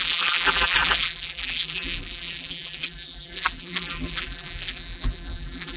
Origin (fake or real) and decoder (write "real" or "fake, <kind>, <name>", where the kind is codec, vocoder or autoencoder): fake, vocoder, BigVGAN v2